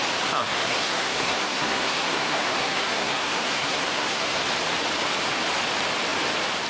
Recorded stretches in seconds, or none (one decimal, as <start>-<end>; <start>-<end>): 0.0-0.4; 4.4-6.7